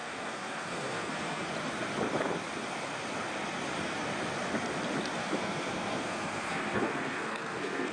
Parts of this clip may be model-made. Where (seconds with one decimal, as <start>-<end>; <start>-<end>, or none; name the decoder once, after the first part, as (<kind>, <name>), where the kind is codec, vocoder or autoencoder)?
0.0-1.5 (codec, SNAC); 5.2-7.9